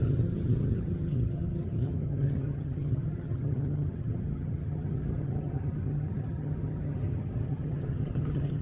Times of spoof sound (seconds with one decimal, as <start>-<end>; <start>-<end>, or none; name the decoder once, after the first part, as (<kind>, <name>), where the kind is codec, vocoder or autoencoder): 0.0-8.6 (vocoder, HiFi-GAN)